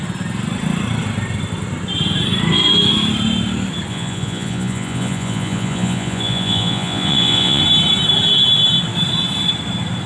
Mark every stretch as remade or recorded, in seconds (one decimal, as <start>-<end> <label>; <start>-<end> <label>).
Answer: 0.0-3.9 recorded; 3.9-7.6 remade; 7.6-10.1 recorded